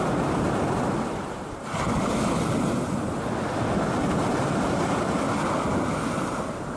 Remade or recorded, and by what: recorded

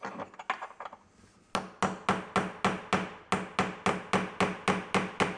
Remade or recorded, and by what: recorded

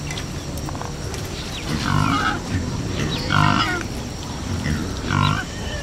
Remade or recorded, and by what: recorded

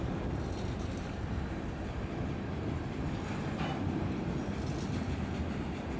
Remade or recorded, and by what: recorded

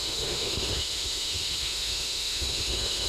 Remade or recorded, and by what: remade, autoencoder, DAC-VAE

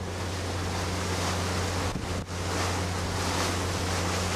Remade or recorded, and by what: recorded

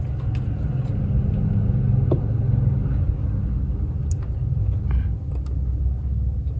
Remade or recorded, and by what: recorded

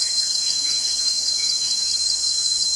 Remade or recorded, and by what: remade, autoencoder, DAC-VAE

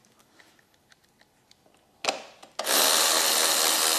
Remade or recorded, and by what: recorded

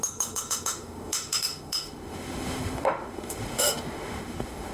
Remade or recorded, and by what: remade, autoencoder, DAC-VAE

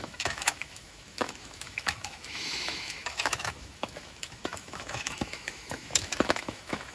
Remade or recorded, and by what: remade, autoencoder, DAC-VAE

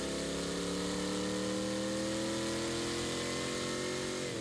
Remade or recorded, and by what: recorded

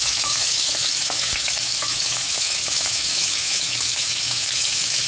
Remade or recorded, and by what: remade, autoencoder, DAC-VAE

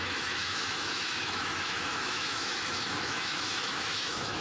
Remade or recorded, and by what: remade, autoencoder, DAC-VAE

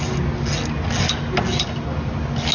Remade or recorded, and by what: recorded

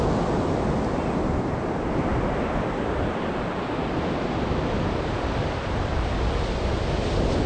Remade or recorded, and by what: recorded